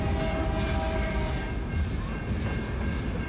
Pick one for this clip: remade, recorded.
recorded